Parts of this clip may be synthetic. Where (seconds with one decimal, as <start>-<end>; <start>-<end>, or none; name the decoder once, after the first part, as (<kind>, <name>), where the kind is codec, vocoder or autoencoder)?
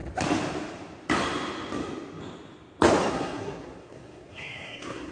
3.1-5.1 (codec, SNAC)